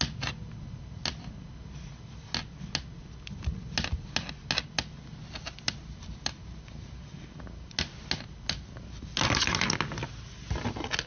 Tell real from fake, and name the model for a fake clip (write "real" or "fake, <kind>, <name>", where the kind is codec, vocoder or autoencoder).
real